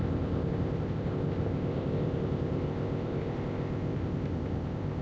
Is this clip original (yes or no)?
no